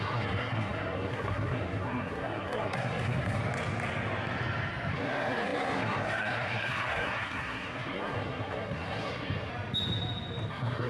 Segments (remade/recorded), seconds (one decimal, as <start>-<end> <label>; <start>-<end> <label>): 0.0-3.4 remade; 3.4-4.9 recorded; 4.9-9.5 remade; 9.5-10.5 recorded; 10.5-10.9 remade